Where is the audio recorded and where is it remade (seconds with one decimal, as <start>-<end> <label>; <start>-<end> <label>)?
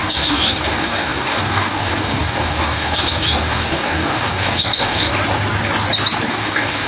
0.0-5.1 remade; 5.1-6.3 recorded; 6.3-6.9 remade